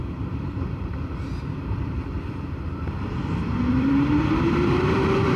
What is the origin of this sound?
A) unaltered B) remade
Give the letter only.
B